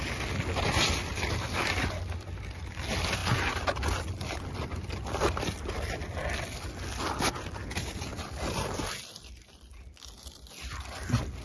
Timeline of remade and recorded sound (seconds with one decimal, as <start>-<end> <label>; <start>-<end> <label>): 0.0-11.4 recorded